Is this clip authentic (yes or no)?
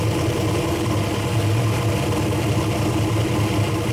yes